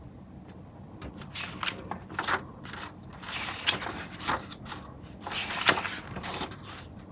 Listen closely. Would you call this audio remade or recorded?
remade